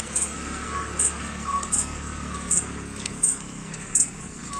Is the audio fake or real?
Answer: fake